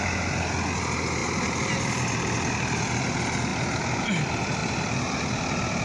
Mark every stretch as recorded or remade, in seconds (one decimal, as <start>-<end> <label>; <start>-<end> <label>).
0.0-1.2 recorded; 1.2-2.9 remade; 2.9-3.5 recorded; 3.5-4.0 remade; 4.0-4.6 recorded; 4.6-5.2 remade; 5.2-5.8 recorded